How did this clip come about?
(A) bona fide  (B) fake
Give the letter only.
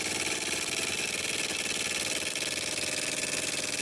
A